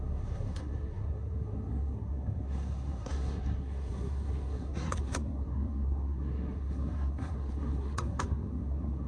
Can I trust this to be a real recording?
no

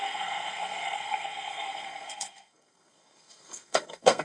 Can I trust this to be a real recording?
no